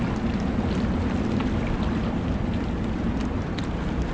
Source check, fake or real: real